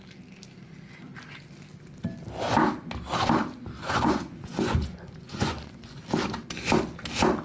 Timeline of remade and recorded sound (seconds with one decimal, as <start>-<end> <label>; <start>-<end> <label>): 0.0-3.8 recorded; 3.8-6.0 remade; 6.0-7.4 recorded